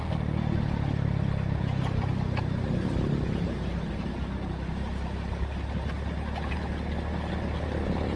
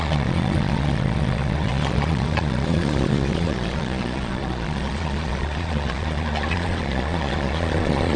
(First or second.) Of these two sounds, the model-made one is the second